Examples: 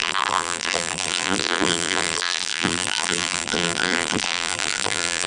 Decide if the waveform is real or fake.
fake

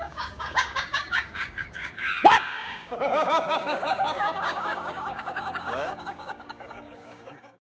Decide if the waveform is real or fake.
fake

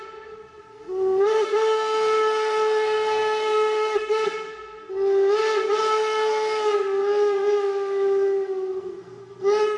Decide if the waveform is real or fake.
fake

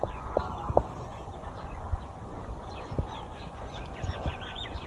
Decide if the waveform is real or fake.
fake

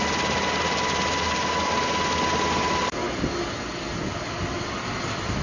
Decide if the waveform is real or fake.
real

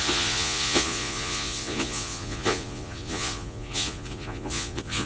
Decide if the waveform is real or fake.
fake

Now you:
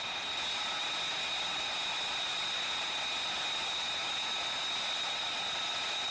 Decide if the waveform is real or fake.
real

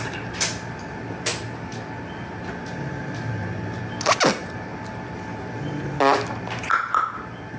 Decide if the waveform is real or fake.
real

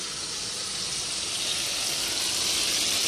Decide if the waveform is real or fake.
fake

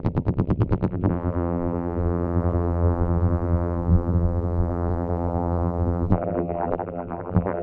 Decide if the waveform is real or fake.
fake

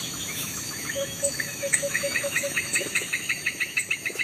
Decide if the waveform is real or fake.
fake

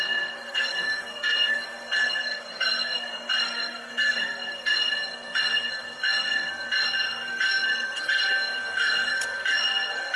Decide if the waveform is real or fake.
fake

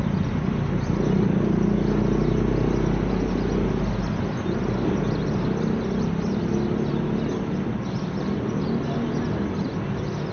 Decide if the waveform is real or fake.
real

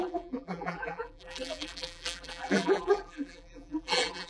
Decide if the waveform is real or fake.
fake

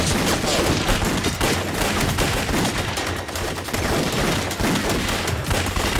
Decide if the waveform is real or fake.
real